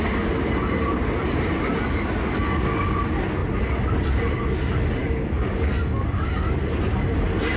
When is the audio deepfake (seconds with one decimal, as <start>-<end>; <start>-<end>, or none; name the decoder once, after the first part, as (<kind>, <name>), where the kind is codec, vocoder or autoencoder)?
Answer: 5.0-6.6 (codec, DAC)